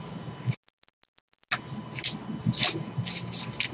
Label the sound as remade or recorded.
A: recorded